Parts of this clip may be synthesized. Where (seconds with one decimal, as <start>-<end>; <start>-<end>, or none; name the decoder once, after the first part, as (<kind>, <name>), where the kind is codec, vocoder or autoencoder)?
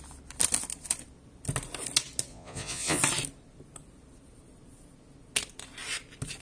2.3-3.0 (vocoder, Vocos)